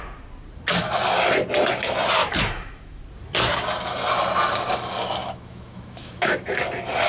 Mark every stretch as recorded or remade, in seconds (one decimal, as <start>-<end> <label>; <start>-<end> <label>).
0.0-2.2 recorded; 2.2-3.0 remade; 3.0-5.2 recorded; 5.2-6.6 remade; 6.6-7.1 recorded